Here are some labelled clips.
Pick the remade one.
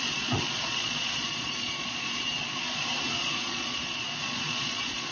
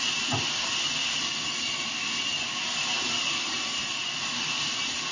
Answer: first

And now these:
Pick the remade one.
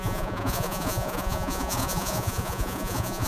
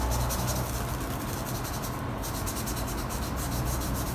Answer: first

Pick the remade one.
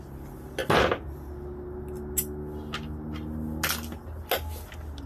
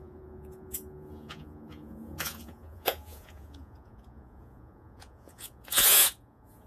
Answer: second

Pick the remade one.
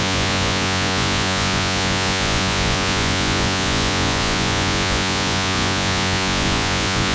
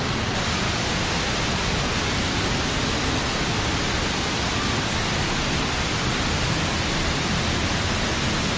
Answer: first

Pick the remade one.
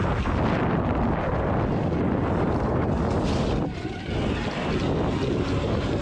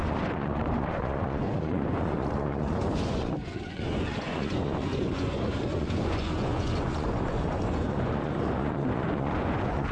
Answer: second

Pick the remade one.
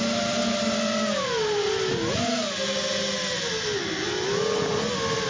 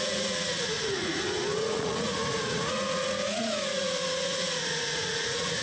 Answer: second